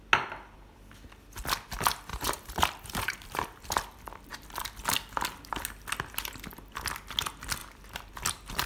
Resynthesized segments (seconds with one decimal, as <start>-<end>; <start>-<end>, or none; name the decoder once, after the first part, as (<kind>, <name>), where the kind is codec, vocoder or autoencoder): 2.1-3.7 (vocoder, BigVGAN v2)